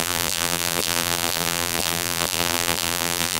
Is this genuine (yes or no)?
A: no